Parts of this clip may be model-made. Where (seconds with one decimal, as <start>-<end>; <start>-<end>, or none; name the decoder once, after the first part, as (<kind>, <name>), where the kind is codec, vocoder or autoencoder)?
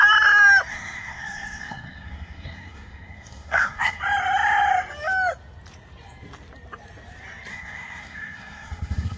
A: 0.7-4.0 (codec, SNAC); 7.5-9.2